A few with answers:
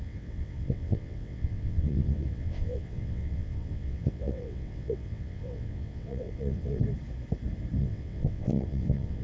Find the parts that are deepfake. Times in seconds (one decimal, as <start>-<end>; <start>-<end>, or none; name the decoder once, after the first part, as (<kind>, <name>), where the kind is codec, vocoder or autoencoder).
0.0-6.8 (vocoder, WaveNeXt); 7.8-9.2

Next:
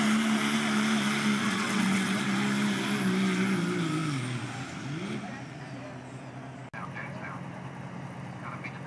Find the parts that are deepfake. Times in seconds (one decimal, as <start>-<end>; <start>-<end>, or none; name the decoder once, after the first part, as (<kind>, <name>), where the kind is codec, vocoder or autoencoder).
1.4-2.2 (vocoder, WaveNeXt)

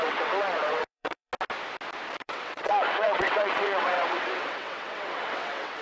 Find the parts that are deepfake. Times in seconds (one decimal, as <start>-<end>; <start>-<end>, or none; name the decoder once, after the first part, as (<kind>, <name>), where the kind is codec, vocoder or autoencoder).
0.0-1.3 (vocoder, WaveNeXt); 2.2-5.8